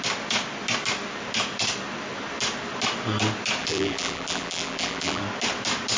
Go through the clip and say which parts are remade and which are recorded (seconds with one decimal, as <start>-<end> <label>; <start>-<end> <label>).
0.0-3.6 recorded; 3.6-5.2 remade; 5.2-6.0 recorded